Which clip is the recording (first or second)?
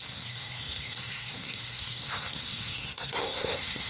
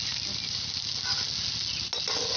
second